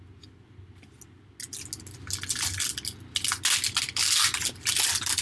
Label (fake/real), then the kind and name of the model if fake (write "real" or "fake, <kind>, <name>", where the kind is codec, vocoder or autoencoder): real